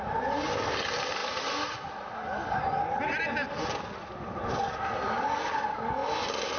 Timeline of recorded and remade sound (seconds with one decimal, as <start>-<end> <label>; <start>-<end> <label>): 0.0-6.6 recorded